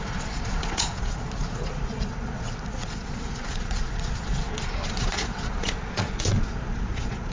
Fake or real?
fake